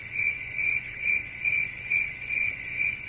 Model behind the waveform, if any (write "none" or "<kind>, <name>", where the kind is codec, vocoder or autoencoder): vocoder, Vocos